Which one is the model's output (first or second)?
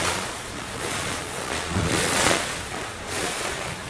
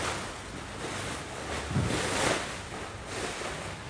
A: first